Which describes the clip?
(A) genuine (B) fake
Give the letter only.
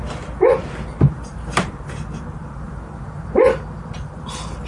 A